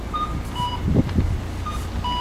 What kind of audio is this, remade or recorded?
recorded